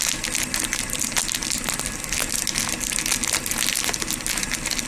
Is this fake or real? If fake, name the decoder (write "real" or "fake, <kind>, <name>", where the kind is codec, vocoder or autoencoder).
real